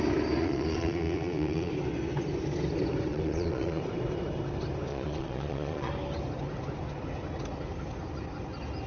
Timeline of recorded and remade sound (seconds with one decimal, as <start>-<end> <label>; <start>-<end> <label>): 0.0-0.4 recorded; 0.4-1.7 remade; 1.7-3.1 recorded; 3.1-3.8 remade; 3.8-4.9 recorded; 4.9-5.9 remade; 5.9-8.9 recorded